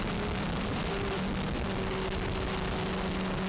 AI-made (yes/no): no